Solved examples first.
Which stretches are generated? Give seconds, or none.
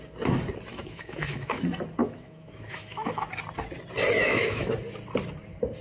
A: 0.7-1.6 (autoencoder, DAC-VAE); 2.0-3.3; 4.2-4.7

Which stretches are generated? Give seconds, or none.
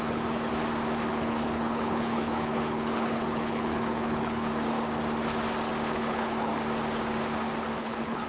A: 0.0-0.5 (codec, HILCodec); 1.1-4.5; 6.0-6.5; 7.8-8.3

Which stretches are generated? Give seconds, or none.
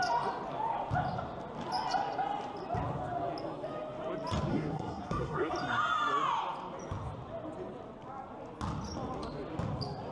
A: 4.5-5.5 (codec, SNAC)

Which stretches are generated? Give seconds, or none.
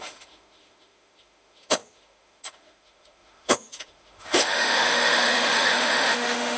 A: 0.0-6.6 (autoencoder, DAC-VAE)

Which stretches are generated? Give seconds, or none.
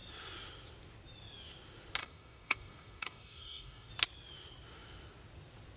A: 2.0-3.9 (codec, DAC)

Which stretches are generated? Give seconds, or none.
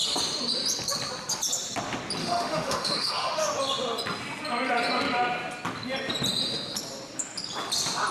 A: 2.2-3.5 (autoencoder, DAC-VAE)